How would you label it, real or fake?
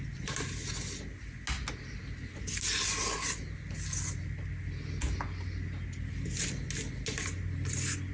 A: real